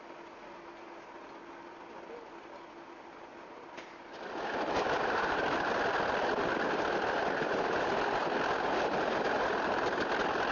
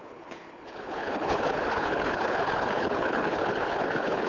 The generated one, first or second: second